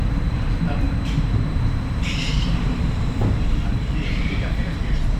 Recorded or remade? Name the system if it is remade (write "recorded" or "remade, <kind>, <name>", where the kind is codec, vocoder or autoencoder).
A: remade, vocoder, BigVGAN v2